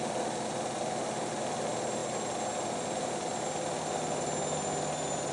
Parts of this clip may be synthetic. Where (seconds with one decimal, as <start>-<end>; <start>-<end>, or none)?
none